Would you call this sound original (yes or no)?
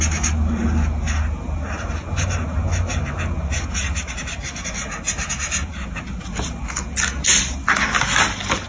yes